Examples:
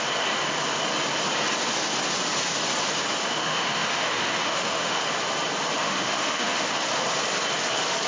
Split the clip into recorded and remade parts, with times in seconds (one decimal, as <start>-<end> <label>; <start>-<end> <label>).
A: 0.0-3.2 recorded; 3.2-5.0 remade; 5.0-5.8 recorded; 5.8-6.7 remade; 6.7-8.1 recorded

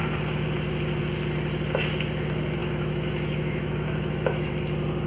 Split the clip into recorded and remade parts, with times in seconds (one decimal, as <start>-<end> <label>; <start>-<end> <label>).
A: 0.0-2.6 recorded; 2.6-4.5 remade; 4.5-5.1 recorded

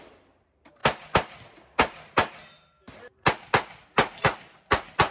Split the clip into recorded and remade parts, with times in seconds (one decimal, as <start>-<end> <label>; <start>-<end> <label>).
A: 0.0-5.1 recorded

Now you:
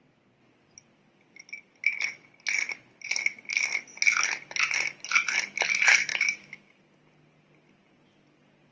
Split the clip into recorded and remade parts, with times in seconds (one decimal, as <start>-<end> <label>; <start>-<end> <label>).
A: 0.0-6.1 recorded; 6.1-6.8 remade; 6.8-8.7 recorded

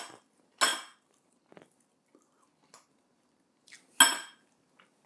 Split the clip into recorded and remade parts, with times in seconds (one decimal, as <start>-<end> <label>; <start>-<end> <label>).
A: 0.0-5.1 recorded